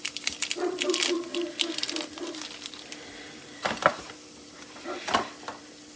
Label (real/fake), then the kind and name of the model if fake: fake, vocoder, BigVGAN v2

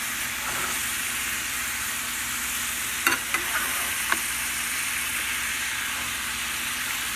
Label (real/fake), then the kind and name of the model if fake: real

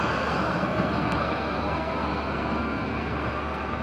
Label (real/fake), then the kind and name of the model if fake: fake, codec, SNAC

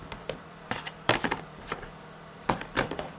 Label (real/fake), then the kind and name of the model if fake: fake, vocoder, BigVGAN v2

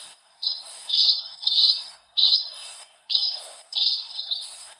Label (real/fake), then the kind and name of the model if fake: fake, codec, SNAC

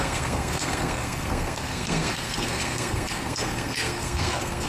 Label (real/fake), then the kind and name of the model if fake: fake, codec, SNAC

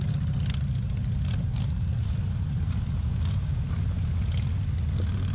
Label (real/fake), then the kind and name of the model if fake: real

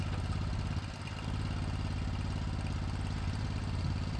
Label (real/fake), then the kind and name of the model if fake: real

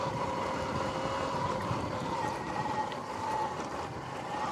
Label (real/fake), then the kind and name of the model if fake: real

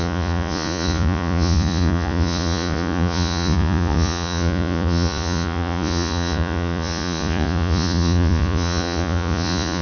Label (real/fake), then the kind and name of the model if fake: fake, vocoder, Vocos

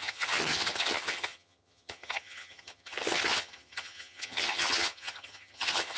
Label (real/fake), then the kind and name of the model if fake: fake, vocoder, HiFi-GAN